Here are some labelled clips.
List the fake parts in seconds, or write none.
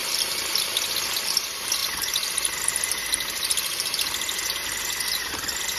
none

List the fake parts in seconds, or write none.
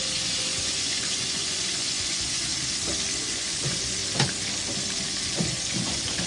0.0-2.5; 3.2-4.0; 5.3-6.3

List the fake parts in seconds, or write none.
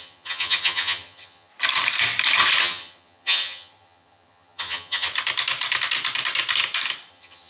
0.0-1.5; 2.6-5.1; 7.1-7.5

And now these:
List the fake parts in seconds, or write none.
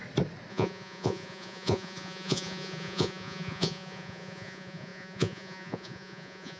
0.5-6.6